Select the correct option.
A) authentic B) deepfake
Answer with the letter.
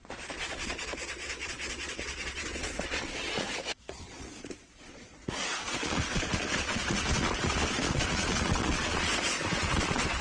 B